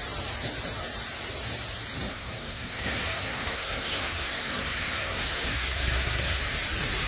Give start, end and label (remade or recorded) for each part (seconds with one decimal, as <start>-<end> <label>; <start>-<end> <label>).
0.0-2.1 recorded; 2.1-6.4 remade; 6.4-7.1 recorded